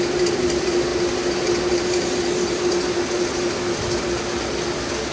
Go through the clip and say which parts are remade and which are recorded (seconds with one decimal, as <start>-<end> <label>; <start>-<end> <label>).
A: 0.0-5.1 recorded